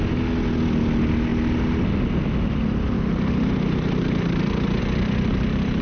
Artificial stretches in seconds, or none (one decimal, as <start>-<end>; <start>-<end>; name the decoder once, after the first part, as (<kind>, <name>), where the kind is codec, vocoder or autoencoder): none